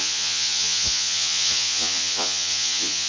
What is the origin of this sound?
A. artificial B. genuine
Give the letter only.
A